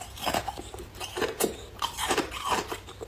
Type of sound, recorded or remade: remade